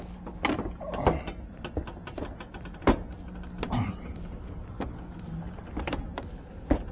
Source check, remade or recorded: recorded